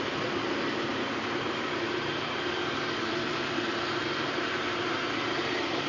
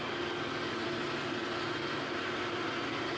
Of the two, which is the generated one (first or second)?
first